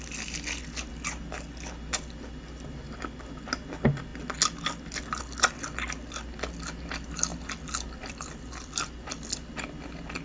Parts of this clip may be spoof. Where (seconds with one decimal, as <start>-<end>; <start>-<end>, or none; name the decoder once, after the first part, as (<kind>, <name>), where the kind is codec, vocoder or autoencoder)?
7.3-9.1 (vocoder, BigVGAN v2)